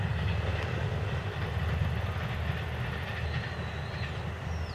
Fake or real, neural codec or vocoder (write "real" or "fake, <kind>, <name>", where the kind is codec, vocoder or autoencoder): real